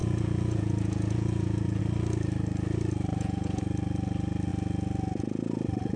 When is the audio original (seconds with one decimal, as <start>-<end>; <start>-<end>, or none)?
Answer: 1.8-3.1; 3.6-6.0